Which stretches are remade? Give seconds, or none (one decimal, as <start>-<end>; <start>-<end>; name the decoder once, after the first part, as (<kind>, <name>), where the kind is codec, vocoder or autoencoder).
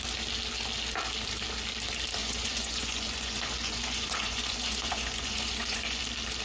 2.2-6.0 (vocoder, Vocos)